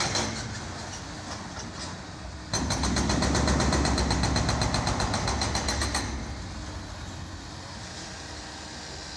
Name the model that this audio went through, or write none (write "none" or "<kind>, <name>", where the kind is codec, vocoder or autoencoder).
none